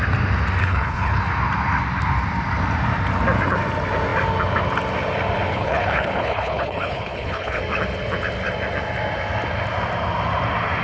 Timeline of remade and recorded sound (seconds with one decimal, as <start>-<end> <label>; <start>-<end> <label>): 0.0-0.6 recorded; 0.6-1.2 remade; 1.2-5.5 recorded; 5.5-7.6 remade; 7.6-10.8 recorded

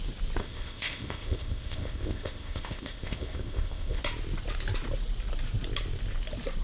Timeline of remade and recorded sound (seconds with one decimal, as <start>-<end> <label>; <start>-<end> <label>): 0.0-0.4 recorded; 0.4-4.0 remade; 4.0-6.6 recorded

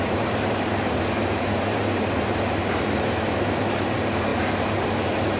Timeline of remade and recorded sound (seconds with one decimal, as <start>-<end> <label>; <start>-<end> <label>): 0.0-5.4 remade

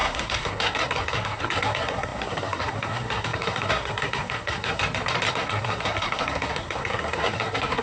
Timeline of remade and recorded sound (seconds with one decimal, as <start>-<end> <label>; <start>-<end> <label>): 0.0-4.8 remade; 4.8-5.3 recorded; 5.3-7.8 remade

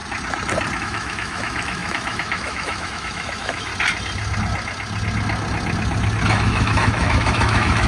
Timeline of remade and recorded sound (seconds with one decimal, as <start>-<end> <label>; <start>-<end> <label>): 0.0-0.8 recorded; 0.8-3.7 remade; 3.7-6.3 recorded; 6.3-7.9 remade

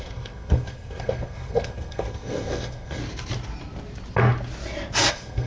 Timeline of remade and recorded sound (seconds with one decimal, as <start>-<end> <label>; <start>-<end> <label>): 0.0-3.0 remade; 3.0-5.1 recorded; 5.1-5.5 remade

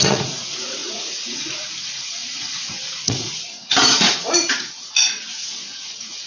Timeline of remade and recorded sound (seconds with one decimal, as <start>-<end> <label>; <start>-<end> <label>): 0.0-6.3 remade